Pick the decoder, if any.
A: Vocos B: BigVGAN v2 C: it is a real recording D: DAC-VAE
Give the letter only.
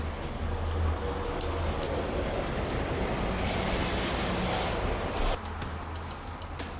C